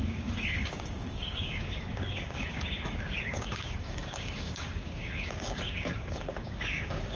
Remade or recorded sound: remade